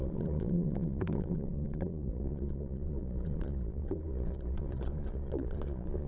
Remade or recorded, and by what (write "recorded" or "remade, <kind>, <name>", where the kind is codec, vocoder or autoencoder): remade, vocoder, Vocos